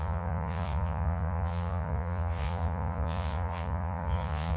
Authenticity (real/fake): fake